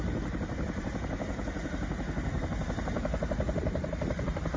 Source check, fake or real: fake